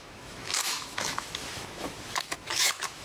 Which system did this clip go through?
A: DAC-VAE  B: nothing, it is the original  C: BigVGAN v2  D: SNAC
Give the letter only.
A